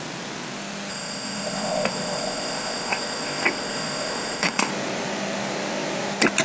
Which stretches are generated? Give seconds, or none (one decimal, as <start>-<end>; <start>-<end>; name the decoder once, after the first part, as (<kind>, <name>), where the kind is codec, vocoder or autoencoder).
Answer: 0.9-4.7 (codec, ZipCodec)